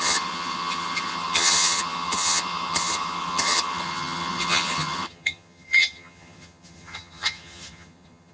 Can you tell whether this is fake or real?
fake